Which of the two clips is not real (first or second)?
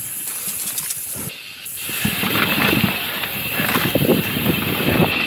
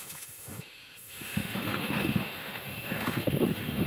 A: second